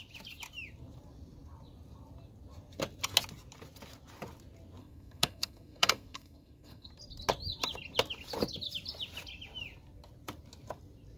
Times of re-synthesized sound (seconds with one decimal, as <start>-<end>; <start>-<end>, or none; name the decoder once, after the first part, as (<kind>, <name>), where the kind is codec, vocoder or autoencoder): 4.8-6.9 (codec, SNAC)